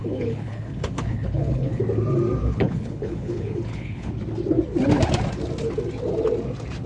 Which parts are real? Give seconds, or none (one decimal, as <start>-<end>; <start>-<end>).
1.8-2.4; 4.1-6.9